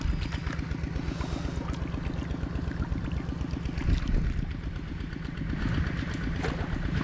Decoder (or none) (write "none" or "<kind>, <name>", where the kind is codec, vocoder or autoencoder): none